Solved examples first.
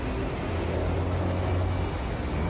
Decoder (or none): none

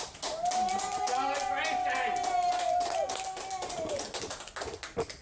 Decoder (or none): none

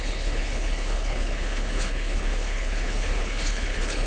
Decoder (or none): codec, HILCodec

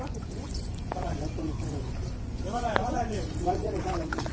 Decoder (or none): vocoder, Vocos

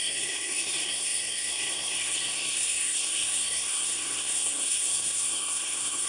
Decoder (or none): codec, SNAC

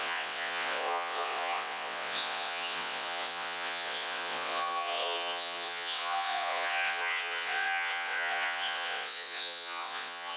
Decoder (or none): vocoder, WaveNeXt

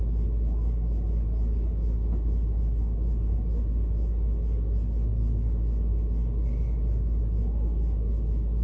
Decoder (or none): none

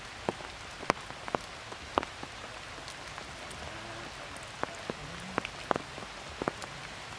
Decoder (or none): none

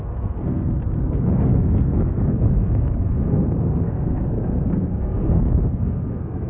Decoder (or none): codec, SNAC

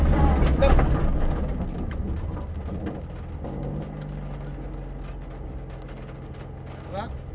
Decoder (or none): none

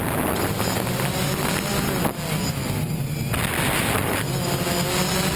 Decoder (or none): none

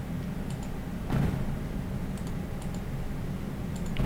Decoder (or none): none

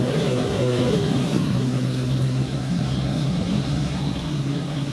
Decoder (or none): codec, SNAC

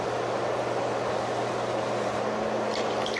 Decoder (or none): none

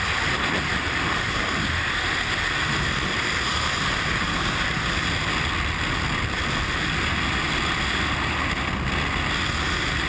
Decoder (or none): none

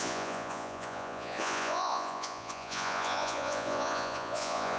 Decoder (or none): vocoder, Vocos